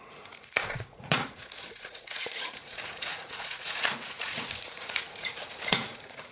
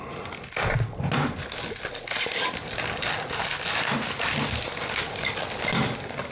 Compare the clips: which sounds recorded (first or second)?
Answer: second